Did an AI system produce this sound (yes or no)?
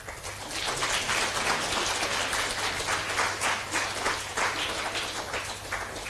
no